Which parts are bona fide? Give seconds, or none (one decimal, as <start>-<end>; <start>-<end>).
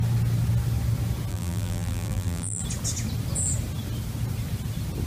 0.0-1.3; 2.6-5.1